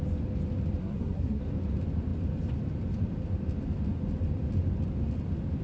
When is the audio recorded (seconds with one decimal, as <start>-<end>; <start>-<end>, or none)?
0.0-0.8; 1.4-5.6